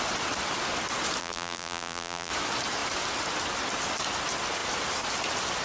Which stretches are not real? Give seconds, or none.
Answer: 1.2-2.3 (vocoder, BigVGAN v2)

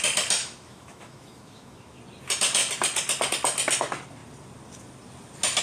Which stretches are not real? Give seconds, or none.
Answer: 0.4-2.0 (autoencoder, DAC-VAE)

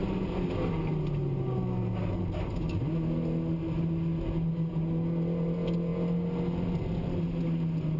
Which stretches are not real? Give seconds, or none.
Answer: none